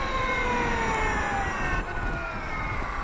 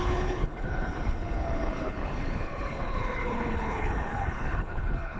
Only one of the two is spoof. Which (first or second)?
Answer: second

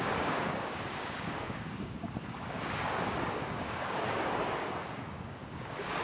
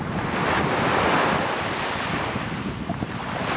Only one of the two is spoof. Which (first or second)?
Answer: first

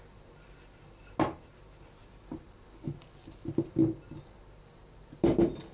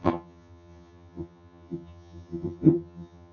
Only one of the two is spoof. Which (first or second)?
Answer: second